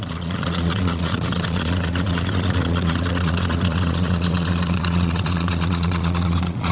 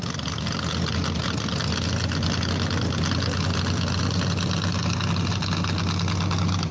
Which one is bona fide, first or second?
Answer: second